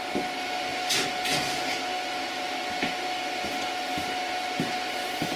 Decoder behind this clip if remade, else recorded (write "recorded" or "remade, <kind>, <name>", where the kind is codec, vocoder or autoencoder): recorded